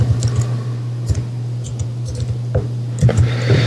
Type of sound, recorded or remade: recorded